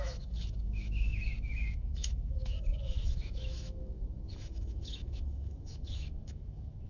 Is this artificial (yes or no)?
yes